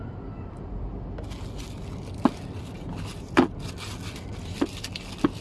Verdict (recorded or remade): recorded